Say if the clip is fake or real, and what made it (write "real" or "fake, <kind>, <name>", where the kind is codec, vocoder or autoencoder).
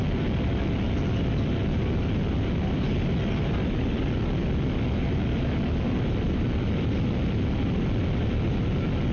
real